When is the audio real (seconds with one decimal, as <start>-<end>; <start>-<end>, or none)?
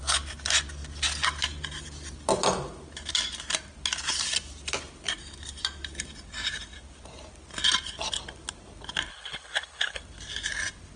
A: 0.0-9.1; 10.0-11.0